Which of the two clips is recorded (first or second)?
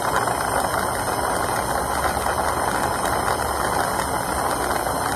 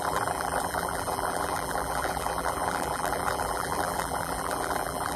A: first